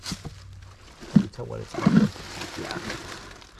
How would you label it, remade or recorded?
recorded